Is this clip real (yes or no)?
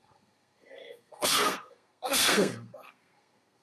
no